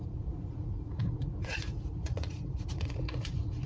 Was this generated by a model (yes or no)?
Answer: yes